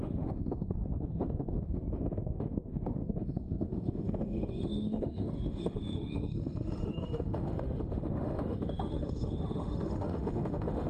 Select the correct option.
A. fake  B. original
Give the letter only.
A